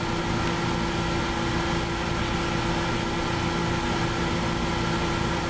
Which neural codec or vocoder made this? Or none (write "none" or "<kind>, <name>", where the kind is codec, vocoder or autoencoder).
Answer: none